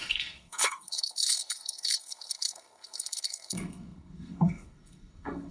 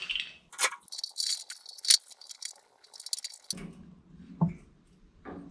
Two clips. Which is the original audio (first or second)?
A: second